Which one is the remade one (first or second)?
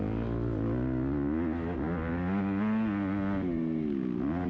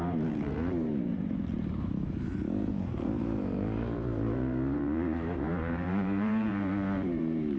second